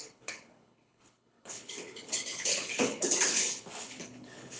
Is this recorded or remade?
remade